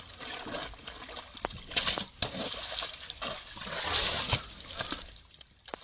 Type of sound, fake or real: real